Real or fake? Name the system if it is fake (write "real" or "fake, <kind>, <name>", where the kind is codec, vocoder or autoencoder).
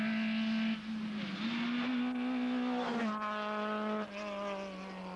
real